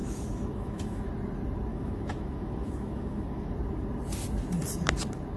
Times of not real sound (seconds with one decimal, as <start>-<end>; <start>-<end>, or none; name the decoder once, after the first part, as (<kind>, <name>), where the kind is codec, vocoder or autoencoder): 0.0-1.1 (autoencoder, DAC-VAE); 1.7-3.5